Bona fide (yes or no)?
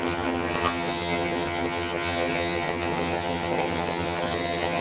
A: no